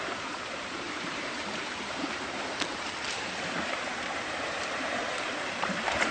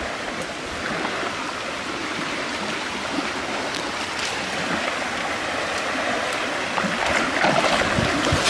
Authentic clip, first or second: second